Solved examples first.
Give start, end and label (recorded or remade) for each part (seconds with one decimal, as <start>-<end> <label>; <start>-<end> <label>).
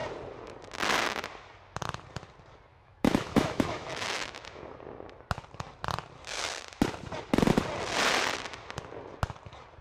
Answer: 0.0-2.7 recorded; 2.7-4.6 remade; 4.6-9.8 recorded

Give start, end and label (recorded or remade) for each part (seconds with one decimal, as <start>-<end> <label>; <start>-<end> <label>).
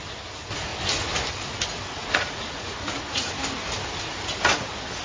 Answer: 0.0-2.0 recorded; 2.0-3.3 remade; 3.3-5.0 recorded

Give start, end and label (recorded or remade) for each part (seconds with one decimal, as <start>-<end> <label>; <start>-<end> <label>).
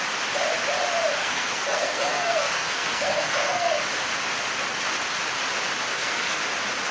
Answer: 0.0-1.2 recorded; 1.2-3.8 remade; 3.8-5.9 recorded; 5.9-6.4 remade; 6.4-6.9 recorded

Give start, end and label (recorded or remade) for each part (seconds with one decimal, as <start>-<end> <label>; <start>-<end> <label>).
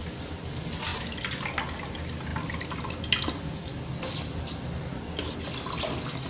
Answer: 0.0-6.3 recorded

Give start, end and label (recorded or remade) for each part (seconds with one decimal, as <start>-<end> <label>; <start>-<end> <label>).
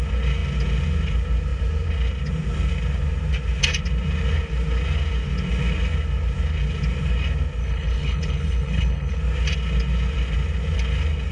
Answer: 0.0-7.6 recorded; 7.6-9.2 remade; 9.2-11.3 recorded